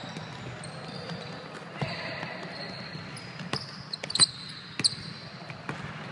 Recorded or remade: recorded